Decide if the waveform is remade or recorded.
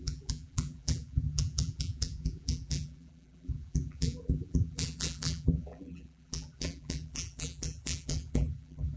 remade